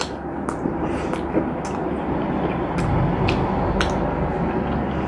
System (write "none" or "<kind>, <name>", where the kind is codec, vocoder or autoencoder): none